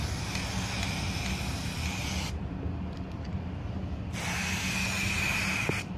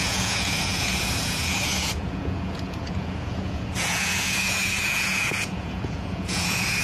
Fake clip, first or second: second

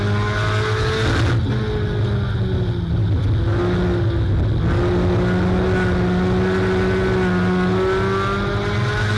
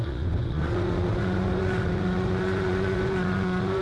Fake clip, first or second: second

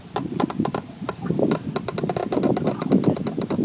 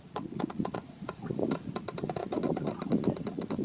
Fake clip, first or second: second